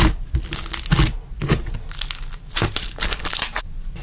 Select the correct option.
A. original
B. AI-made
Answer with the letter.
A